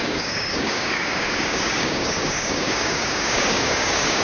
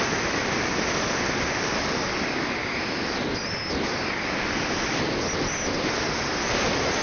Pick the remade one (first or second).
first